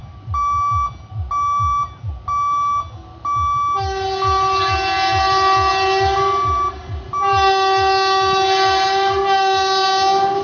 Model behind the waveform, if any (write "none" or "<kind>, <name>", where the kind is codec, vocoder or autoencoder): none